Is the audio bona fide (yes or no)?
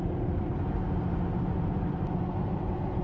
no